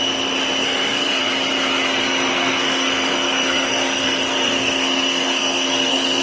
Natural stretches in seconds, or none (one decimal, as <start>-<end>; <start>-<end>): 0.0-0.6; 1.2-2.3